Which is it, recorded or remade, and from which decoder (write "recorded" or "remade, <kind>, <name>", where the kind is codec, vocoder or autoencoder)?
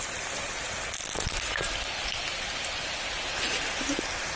recorded